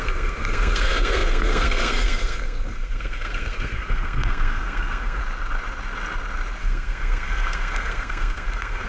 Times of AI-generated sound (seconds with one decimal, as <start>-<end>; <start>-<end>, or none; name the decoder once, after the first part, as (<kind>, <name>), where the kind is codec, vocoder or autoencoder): 0.0-5.2 (codec, SNAC); 6.6-8.9